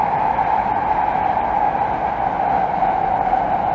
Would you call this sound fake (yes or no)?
no